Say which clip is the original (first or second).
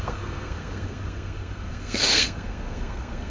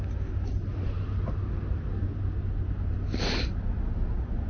second